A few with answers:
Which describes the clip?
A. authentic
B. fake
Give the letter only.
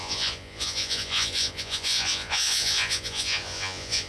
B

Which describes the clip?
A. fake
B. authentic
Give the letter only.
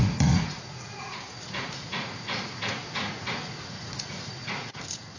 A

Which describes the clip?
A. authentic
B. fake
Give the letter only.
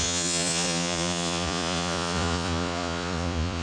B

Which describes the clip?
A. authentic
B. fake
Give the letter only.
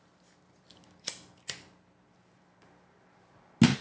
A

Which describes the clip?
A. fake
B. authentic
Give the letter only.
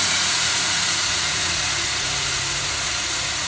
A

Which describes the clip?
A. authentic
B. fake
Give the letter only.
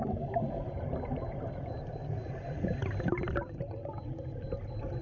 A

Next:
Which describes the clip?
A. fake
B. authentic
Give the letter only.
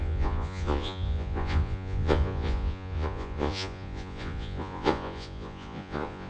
A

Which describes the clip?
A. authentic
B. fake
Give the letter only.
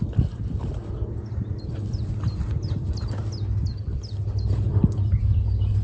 A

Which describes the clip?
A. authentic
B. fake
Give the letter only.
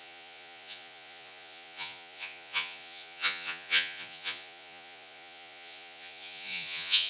B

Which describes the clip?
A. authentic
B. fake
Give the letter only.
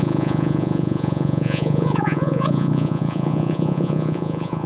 B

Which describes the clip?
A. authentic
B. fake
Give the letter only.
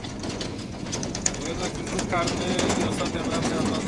B